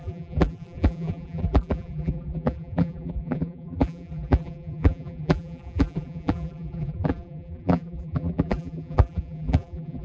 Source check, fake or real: fake